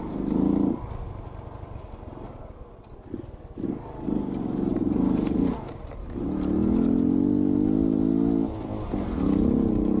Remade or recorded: recorded